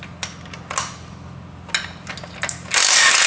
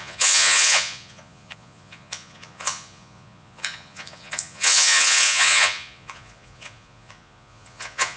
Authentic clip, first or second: first